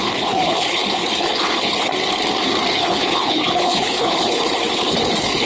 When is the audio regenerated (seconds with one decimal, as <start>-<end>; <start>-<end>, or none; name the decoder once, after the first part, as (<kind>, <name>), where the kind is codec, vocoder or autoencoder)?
0.0-1.9 (codec, HILCodec); 2.7-5.5